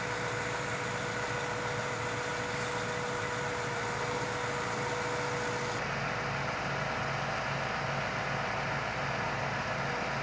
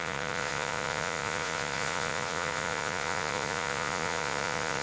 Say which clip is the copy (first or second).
second